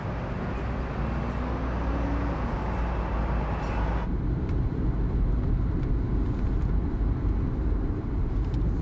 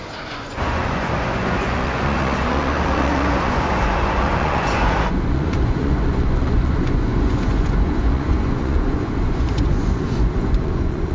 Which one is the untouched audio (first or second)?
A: first